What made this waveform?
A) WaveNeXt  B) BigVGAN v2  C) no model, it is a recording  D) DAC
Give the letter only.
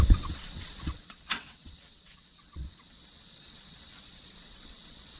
A